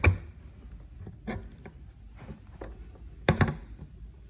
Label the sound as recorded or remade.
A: recorded